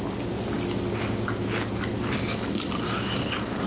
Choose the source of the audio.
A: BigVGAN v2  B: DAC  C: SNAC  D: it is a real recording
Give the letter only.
D